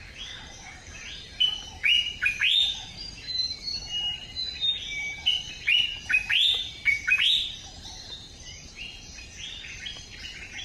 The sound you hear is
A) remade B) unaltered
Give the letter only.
A